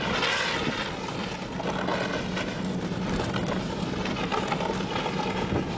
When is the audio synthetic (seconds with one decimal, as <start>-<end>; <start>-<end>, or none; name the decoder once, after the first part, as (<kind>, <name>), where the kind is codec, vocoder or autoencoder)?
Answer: none